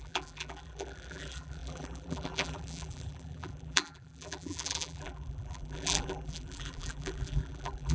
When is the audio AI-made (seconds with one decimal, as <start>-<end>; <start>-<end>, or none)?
0.0-7.9